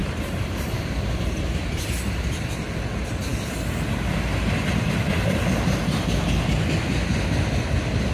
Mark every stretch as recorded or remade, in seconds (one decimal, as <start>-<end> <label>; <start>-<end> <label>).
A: 0.0-1.8 remade; 1.8-8.1 recorded